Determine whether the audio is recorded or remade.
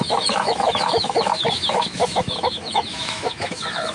remade